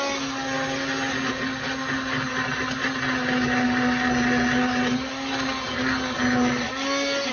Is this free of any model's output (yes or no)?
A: yes